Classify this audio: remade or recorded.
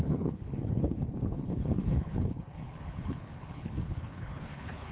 remade